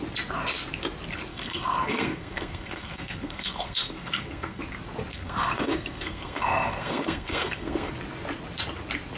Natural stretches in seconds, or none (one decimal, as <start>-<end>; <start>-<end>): 0.0-1.3; 4.6-5.1; 7.9-9.2